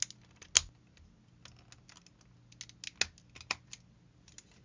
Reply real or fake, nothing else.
real